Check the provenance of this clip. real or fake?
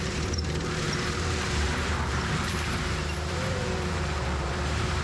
fake